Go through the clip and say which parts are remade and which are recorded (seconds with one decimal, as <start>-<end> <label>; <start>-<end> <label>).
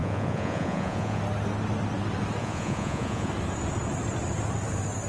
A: 0.0-1.2 remade; 1.2-2.4 recorded; 2.4-3.3 remade; 3.3-5.1 recorded